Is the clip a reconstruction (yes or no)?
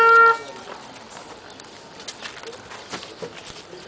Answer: no